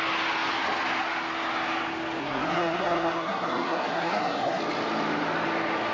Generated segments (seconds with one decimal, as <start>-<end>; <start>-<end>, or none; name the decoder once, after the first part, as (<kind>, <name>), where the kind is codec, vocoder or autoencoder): 2.2-4.6 (codec, SNAC)